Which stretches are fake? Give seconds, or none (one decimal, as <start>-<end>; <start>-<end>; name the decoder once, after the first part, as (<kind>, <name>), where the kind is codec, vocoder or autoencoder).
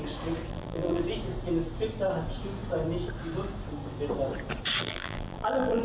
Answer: 0.5-1.0 (vocoder, BigVGAN v2); 4.8-5.8